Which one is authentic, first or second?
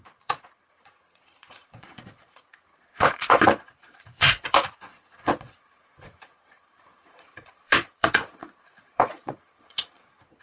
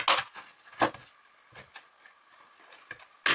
second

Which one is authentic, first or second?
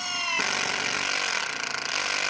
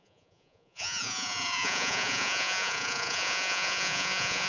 first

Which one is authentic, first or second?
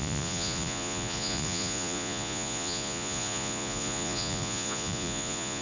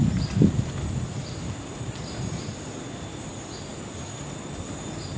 second